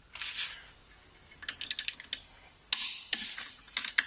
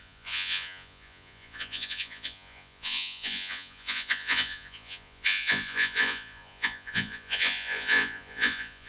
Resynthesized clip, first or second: second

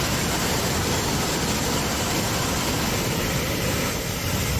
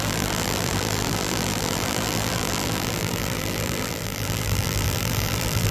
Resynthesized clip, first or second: second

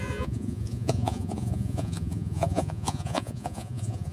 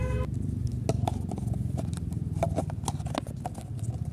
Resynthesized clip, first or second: first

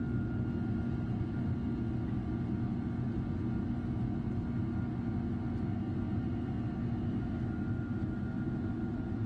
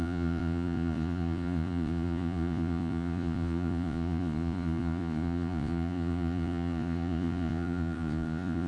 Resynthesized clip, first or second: second